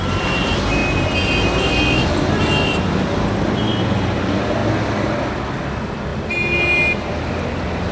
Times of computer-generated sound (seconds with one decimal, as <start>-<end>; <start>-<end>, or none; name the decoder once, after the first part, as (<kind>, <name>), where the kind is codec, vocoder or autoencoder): none